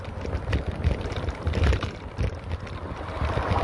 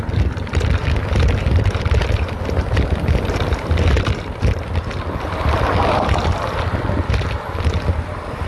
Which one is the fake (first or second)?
first